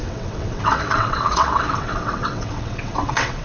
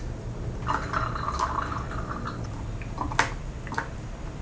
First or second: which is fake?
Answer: first